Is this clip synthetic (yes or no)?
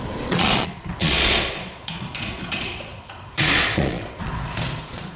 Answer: yes